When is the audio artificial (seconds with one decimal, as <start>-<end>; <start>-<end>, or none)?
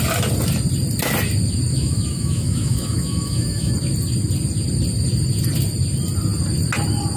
1.7-3.7